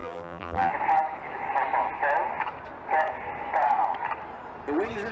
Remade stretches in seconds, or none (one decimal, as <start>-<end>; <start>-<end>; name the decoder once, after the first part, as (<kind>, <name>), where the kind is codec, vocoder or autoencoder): 0.0-0.7 (vocoder, BigVGAN v2)